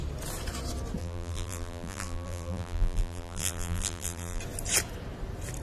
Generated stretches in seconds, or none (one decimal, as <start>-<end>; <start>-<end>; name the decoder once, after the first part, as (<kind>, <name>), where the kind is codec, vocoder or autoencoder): 1.0-4.4 (vocoder, BigVGAN v2)